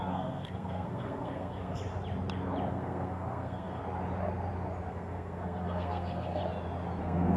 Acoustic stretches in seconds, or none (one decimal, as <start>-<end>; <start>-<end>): 1.8-2.7; 3.8-4.9; 6.4-7.0